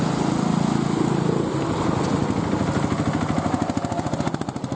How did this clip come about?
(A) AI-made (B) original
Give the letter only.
B